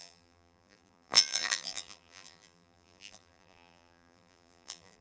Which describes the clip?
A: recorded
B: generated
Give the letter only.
B